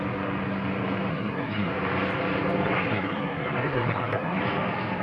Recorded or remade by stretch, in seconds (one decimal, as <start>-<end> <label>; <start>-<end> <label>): 0.0-1.1 recorded; 1.1-1.7 remade; 1.7-2.8 recorded; 2.8-4.4 remade; 4.4-5.0 recorded